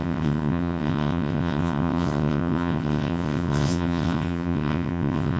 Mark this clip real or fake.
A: fake